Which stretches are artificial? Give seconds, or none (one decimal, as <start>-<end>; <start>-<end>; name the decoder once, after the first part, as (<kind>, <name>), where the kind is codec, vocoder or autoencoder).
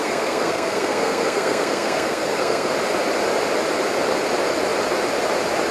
0.0-2.7 (codec, SNAC)